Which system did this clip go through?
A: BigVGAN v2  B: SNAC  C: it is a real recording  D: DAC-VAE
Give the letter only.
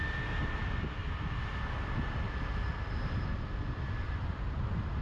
C